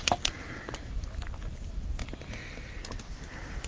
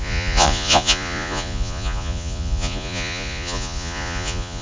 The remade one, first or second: second